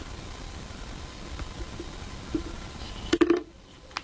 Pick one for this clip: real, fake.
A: real